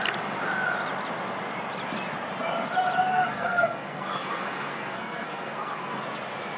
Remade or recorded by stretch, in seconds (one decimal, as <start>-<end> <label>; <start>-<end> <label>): 0.0-3.1 recorded; 3.1-6.0 remade; 6.0-6.6 recorded